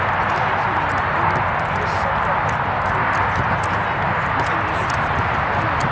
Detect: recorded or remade recorded